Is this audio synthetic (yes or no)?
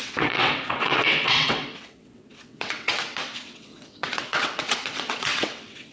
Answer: yes